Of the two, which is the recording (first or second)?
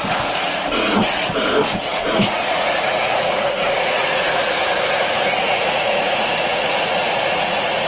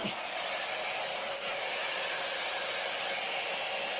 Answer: second